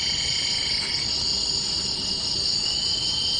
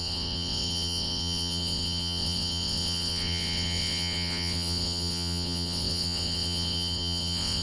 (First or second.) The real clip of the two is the first